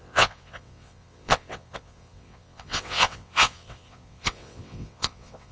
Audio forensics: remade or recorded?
remade